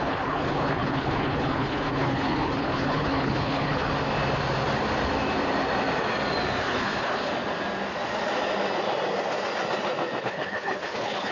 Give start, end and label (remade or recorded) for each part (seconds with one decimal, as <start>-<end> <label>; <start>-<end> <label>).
0.0-3.9 remade; 3.9-6.6 recorded; 6.6-7.3 remade; 7.3-10.2 recorded; 10.2-11.3 remade